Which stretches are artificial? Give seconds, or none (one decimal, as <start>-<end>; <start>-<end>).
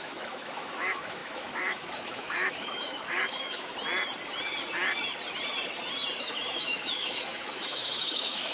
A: 0.0-3.7; 6.2-8.5